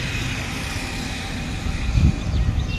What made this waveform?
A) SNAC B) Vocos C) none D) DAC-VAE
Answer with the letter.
C